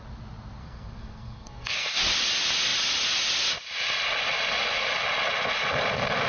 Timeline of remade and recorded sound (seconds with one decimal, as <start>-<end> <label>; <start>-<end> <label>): 0.0-0.6 recorded; 0.6-2.0 remade; 2.0-6.3 recorded